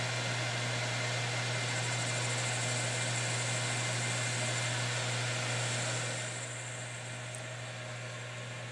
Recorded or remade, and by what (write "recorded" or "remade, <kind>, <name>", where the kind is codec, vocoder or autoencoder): recorded